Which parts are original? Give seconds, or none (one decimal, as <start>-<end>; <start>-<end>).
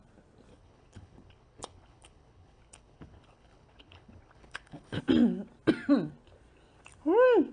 0.0-0.5; 5.0-7.5